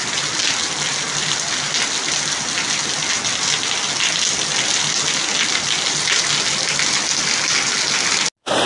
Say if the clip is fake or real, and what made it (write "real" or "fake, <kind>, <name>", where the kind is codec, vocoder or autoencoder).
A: real